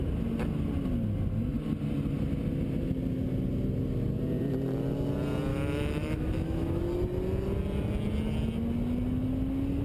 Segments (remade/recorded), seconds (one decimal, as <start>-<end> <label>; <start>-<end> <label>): 0.0-5.5 recorded; 5.5-6.8 remade; 6.8-9.8 recorded